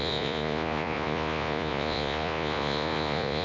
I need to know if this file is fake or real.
fake